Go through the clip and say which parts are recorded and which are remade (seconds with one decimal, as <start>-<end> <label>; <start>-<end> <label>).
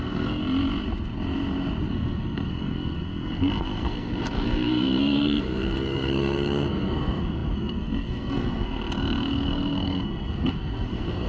0.0-0.4 remade; 0.4-1.9 recorded; 1.9-11.3 remade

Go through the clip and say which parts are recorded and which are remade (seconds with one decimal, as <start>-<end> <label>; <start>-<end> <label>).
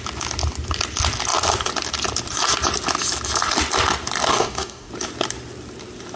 0.0-4.3 recorded; 4.3-4.9 remade; 4.9-6.2 recorded